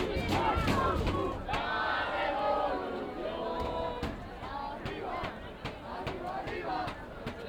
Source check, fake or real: real